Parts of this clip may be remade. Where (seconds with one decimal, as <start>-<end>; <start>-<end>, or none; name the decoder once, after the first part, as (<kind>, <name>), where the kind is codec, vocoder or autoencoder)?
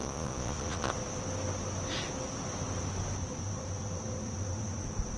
0.0-0.9 (vocoder, Vocos)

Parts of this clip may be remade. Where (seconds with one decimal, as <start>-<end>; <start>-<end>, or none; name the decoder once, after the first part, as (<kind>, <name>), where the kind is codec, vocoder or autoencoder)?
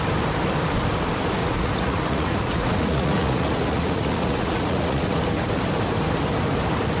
1.4-5.2 (vocoder, Vocos)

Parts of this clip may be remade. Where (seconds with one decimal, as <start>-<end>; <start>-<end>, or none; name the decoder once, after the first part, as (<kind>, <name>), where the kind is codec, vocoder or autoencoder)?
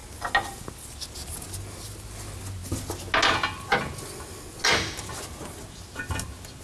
none